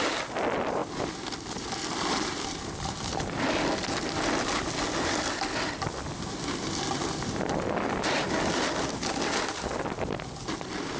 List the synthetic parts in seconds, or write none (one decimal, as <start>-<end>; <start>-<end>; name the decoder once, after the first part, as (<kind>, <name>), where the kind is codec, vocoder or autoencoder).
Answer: none